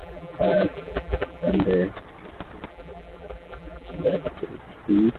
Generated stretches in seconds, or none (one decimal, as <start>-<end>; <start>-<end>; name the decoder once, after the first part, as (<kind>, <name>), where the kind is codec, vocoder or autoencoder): 0.0-1.6 (vocoder, BigVGAN v2); 2.7-4.3